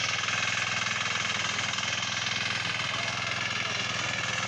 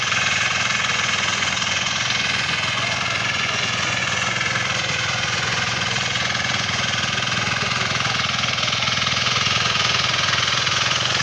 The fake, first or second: second